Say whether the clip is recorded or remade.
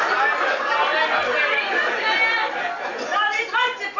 recorded